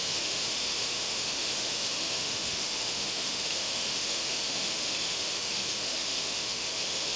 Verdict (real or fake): fake